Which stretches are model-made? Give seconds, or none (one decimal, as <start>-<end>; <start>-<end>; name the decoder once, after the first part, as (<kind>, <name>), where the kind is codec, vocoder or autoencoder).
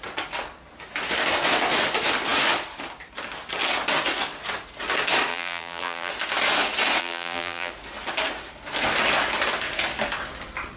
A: 5.3-6.1 (vocoder, BigVGAN v2); 7.0-7.7